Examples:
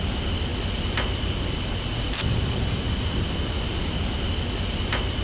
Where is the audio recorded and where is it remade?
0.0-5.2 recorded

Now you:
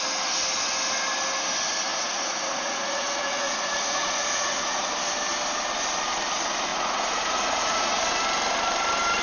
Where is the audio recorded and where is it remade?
0.0-1.9 recorded; 1.9-4.9 remade; 4.9-6.7 recorded; 6.7-8.0 remade; 8.0-9.2 recorded

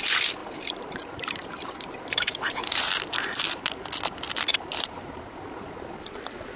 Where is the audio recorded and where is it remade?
0.0-0.4 recorded; 0.4-3.0 remade; 3.0-4.5 recorded; 4.5-6.0 remade; 6.0-6.6 recorded

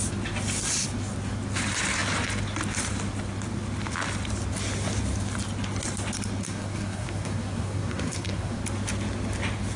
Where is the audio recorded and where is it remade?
0.0-6.4 recorded; 6.4-8.6 remade; 8.6-9.8 recorded

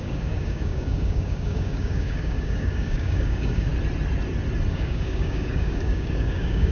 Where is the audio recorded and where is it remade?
0.0-3.7 remade; 3.7-4.7 recorded; 4.7-6.7 remade